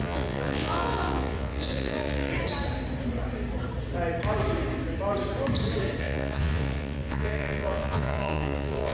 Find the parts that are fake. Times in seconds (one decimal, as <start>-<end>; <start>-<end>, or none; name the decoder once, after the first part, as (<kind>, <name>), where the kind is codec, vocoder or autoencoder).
0.0-2.3 (vocoder, WaveNeXt); 6.0-8.9